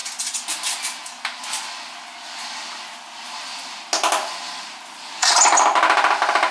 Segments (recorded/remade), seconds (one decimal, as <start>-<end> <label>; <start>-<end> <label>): 0.0-6.5 recorded